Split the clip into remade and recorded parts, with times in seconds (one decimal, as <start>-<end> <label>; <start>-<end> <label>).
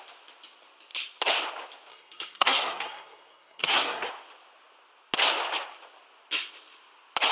0.0-1.9 recorded; 1.9-4.1 remade; 4.1-7.3 recorded